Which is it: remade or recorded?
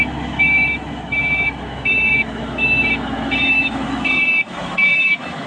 remade